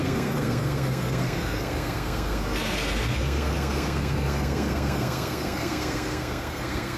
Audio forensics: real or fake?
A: fake